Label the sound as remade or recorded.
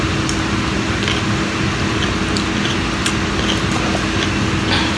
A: recorded